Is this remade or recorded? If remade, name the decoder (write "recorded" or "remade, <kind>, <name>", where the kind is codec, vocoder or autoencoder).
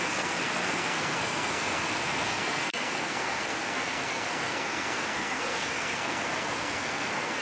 remade, codec, SNAC